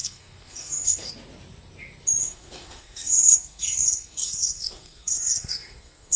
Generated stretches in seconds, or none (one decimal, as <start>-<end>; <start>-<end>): 0.0-1.1; 2.2-6.2